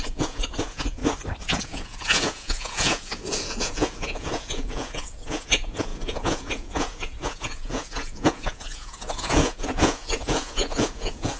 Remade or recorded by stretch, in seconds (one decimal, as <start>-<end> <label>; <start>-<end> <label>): 0.0-1.0 remade; 1.0-1.5 recorded; 1.5-11.4 remade